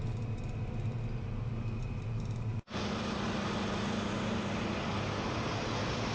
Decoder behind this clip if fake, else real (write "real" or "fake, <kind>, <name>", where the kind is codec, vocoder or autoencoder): real